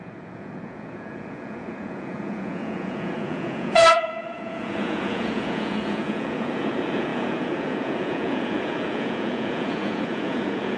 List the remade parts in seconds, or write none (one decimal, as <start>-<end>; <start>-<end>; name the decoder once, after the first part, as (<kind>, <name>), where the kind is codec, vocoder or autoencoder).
0.0-10.8 (vocoder, Vocos)